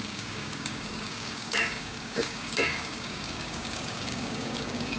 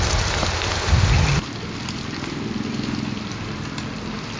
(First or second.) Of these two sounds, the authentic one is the second